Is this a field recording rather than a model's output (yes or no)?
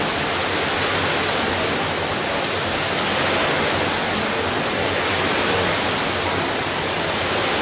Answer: yes